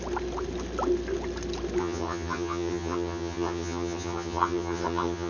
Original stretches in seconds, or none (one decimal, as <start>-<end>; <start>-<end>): 0.0-1.8